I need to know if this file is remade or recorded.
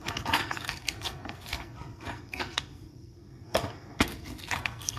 remade